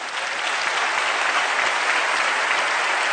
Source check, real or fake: real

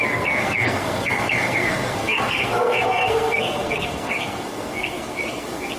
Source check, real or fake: fake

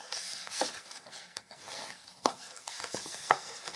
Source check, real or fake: fake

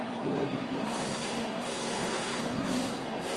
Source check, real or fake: fake